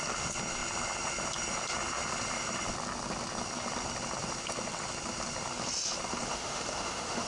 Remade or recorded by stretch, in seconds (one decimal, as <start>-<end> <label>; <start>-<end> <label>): 0.0-6.1 recorded; 6.1-7.3 remade